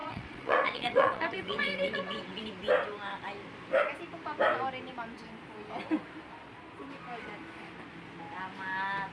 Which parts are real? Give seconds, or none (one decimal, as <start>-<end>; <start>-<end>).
2.4-9.1